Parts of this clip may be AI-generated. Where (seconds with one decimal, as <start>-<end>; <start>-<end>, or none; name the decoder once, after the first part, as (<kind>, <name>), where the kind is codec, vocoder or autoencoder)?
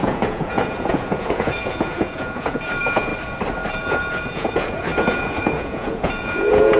0.0-3.1 (vocoder, Vocos); 3.7-6.8